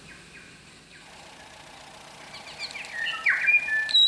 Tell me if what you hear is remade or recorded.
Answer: recorded